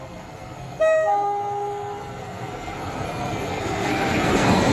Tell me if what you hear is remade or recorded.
remade